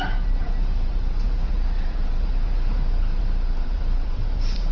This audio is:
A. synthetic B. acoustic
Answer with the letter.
A